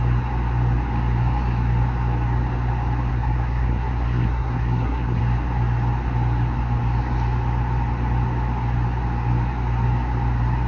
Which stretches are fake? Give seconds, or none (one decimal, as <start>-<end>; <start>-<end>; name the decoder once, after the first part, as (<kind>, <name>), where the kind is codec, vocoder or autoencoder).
3.1-5.2 (codec, SNAC)